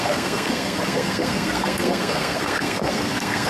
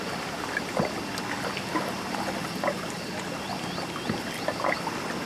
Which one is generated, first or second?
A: first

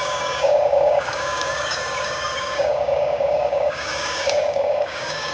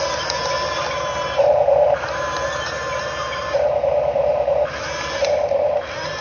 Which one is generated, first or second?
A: first